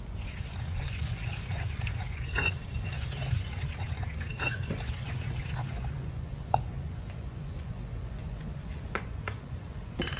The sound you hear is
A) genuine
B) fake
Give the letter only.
B